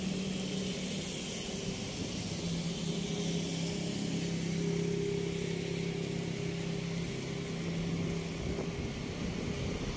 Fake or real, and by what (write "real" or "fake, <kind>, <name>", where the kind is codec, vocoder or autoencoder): real